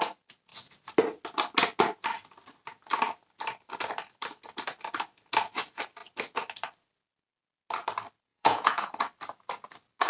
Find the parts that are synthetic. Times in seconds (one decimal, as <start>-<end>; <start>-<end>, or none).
8.3-8.9